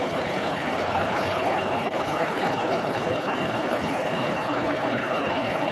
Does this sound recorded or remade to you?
remade